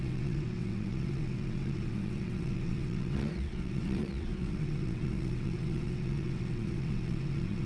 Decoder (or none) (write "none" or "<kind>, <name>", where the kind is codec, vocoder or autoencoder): vocoder, WaveNeXt